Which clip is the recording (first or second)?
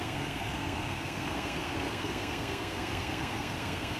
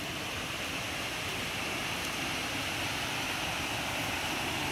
second